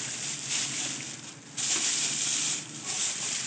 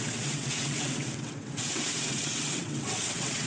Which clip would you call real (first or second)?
first